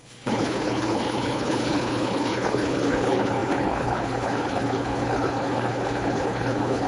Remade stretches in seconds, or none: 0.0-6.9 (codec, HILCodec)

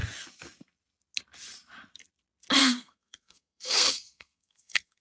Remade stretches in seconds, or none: 2.6-5.0 (codec, SNAC)

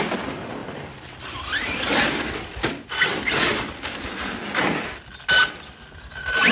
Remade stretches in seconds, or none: none